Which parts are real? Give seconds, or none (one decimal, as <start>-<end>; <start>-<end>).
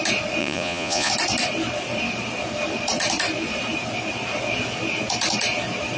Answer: 0.0-0.4; 1.1-6.0